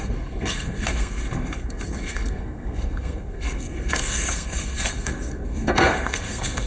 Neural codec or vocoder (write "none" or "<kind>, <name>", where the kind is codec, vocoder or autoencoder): codec, SNAC